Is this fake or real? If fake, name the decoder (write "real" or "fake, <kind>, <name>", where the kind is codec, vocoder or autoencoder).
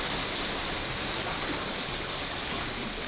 real